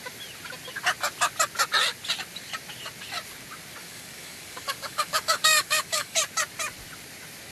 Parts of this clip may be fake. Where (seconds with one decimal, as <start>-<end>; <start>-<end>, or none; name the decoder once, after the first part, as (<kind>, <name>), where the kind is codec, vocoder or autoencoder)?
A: 3.8-6.2 (codec, DAC)